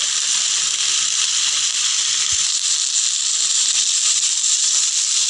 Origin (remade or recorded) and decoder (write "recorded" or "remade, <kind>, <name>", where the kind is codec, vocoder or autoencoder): remade, vocoder, BigVGAN v2